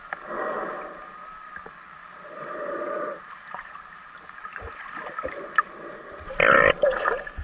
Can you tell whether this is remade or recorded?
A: recorded